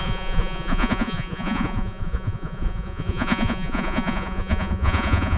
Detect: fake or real fake